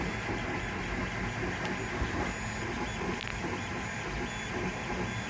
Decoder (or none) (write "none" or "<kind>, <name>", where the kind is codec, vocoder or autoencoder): none